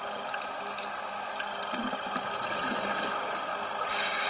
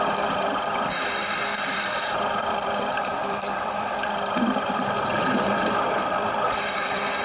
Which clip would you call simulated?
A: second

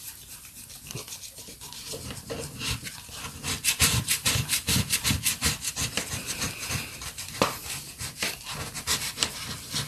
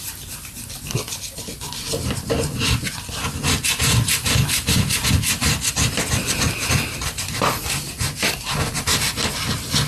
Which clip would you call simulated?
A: first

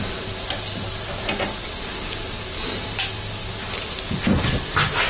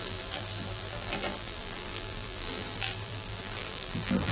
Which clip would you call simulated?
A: second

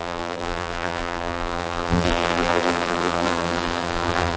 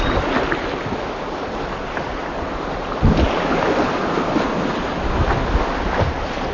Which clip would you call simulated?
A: first